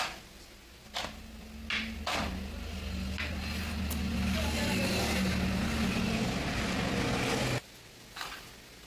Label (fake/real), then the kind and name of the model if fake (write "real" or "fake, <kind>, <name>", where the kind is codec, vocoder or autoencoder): real